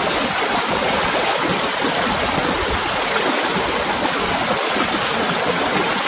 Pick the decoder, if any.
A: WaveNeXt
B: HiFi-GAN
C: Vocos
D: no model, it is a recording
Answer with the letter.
D